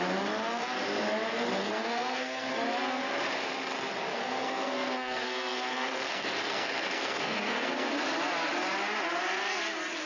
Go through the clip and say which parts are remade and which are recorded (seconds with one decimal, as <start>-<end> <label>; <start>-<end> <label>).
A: 0.0-1.6 recorded; 1.6-2.5 remade; 2.5-4.1 recorded; 4.1-7.9 remade; 7.9-10.1 recorded